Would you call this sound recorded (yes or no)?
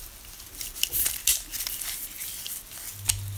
yes